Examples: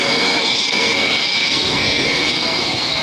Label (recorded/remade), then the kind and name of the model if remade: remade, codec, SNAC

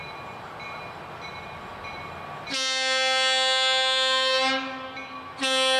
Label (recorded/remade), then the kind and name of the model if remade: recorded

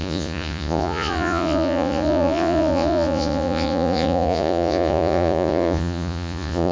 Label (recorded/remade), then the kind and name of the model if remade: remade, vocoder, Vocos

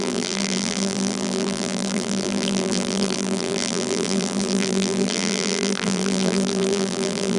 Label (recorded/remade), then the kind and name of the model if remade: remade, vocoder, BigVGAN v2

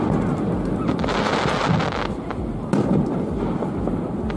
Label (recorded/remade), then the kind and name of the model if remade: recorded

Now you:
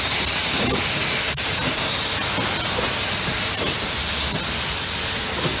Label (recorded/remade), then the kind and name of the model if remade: recorded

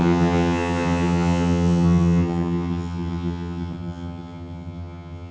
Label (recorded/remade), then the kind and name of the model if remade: remade, vocoder, HiFi-GAN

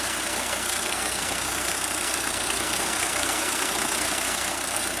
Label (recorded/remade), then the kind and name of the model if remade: remade, codec, SNAC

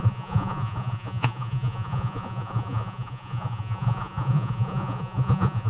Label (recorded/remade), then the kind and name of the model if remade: remade, vocoder, Vocos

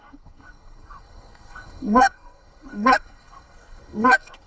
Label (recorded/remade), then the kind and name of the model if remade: remade, codec, SNAC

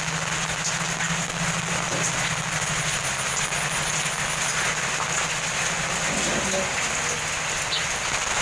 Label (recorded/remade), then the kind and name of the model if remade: recorded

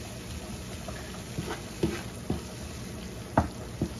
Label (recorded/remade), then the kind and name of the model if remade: recorded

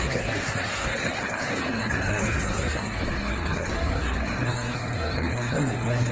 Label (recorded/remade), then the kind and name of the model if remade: remade, codec, SNAC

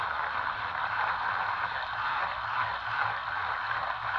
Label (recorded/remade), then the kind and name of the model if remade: recorded